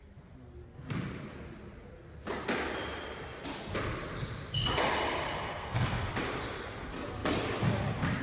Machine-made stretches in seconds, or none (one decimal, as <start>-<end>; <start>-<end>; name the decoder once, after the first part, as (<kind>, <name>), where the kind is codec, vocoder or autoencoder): 5.5-6.1 (codec, SNAC)